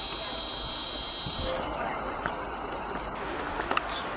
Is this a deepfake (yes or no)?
no